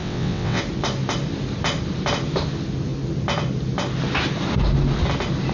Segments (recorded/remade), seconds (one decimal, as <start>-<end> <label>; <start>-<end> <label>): 0.0-0.6 remade; 0.6-5.5 recorded